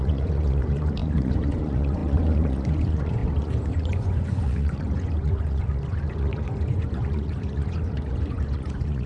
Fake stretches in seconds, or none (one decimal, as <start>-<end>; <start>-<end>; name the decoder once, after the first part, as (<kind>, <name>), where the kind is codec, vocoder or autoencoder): 0.0-9.1 (vocoder, Vocos)